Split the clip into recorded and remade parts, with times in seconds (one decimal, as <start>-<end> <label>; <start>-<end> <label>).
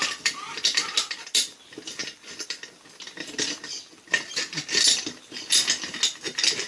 0.0-6.7 recorded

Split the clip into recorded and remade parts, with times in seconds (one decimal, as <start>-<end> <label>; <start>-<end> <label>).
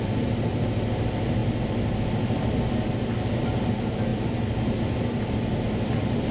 0.0-6.3 recorded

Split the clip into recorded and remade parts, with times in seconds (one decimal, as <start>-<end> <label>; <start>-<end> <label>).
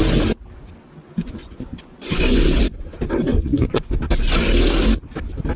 0.0-1.0 recorded; 1.0-2.6 remade; 2.6-3.3 recorded; 3.3-4.0 remade; 4.0-5.6 recorded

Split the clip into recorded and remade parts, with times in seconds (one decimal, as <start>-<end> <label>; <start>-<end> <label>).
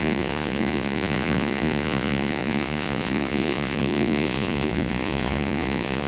0.0-6.1 remade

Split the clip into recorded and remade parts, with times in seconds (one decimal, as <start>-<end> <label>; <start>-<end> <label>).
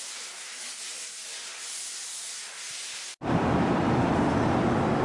0.0-5.0 remade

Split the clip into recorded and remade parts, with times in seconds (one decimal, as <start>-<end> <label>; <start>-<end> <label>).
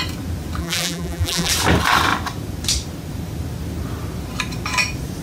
0.0-0.6 recorded; 0.6-1.5 remade; 1.5-5.2 recorded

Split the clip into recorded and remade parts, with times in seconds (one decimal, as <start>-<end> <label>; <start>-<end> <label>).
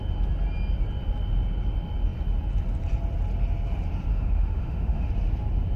0.0-4.1 recorded; 4.1-5.1 remade; 5.1-5.8 recorded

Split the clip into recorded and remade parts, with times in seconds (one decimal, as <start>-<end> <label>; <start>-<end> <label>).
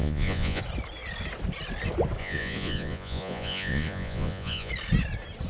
0.0-0.6 remade; 0.6-2.2 recorded; 2.2-4.7 remade; 4.7-5.5 recorded